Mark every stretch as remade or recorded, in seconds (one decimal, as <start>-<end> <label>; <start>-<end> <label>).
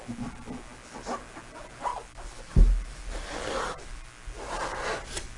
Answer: 0.0-5.4 recorded